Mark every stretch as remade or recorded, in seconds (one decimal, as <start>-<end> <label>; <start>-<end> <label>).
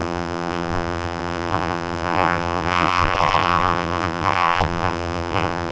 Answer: 0.0-5.7 remade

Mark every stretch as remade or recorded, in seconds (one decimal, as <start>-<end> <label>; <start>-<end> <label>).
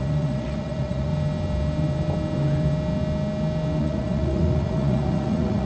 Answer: 0.0-1.1 remade; 1.1-3.8 recorded; 3.8-5.7 remade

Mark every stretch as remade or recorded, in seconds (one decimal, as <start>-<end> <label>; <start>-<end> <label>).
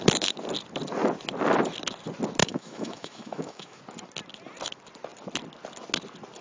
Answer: 0.0-2.4 recorded; 2.4-3.8 remade; 3.8-6.4 recorded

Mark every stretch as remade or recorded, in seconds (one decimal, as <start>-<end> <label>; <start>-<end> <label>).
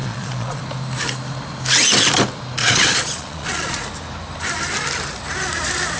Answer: 0.0-0.6 remade; 0.6-2.6 recorded; 2.6-3.8 remade; 3.8-6.0 recorded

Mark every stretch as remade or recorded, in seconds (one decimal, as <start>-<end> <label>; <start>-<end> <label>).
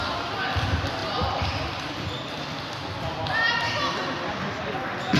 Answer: 0.0-5.2 recorded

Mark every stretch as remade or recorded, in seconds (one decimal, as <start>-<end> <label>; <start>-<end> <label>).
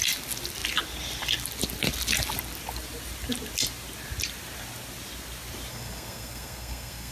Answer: 0.0-5.7 recorded; 5.7-7.1 remade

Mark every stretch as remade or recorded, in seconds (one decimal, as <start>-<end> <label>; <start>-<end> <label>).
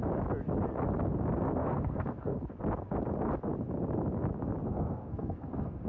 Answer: 0.0-1.6 recorded; 1.6-2.5 remade; 2.5-4.7 recorded; 4.7-5.9 remade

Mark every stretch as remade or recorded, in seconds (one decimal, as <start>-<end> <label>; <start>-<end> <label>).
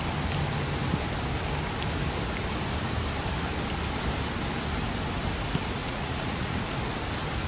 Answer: 0.0-5.8 recorded; 5.8-6.6 remade; 6.6-7.5 recorded